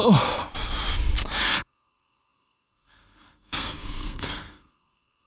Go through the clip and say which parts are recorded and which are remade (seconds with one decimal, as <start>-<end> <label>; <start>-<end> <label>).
0.0-1.4 recorded; 1.4-5.3 remade